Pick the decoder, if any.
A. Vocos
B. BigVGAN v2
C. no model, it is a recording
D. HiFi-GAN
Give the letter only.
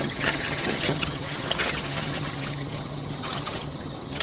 D